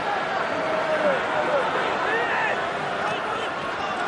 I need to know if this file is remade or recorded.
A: recorded